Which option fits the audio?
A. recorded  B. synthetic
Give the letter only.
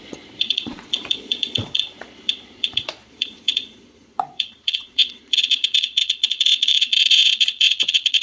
B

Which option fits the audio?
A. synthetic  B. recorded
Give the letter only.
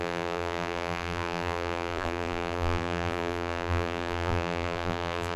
A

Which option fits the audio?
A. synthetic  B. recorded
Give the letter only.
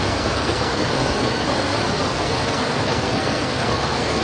A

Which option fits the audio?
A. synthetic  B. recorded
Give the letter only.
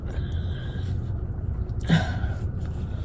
B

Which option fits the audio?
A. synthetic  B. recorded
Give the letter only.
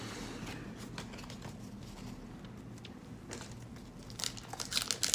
B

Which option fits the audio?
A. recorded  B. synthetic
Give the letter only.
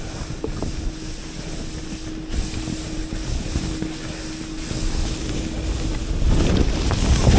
A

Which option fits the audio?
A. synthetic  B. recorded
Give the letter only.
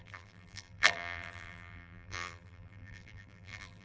A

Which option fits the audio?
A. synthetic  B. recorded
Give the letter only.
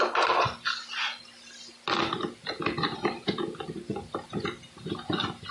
B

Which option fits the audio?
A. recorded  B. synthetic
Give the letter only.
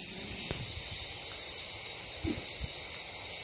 A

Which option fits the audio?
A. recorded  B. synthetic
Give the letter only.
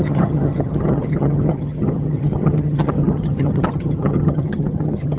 B